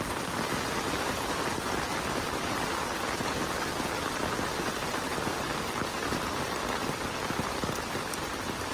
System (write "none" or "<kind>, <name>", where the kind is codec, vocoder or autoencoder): vocoder, BigVGAN v2